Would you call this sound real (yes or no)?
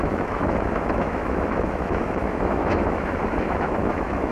no